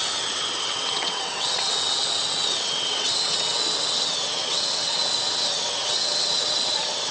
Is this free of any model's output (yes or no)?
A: no